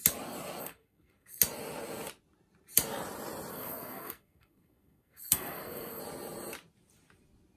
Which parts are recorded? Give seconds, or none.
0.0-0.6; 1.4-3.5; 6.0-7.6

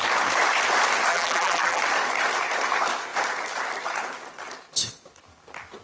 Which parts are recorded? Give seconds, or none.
0.0-1.1; 1.8-5.8

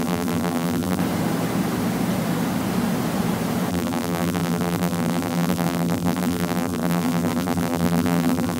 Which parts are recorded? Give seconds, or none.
1.0-3.7

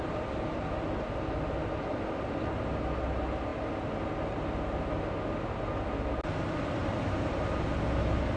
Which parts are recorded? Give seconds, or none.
0.0-8.4

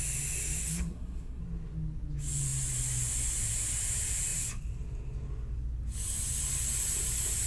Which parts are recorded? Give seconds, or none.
0.0-0.6; 1.4-7.5